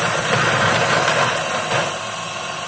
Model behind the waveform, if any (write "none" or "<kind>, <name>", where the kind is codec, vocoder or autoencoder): none